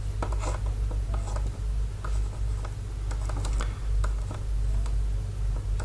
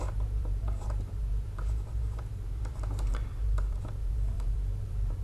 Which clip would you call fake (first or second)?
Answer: second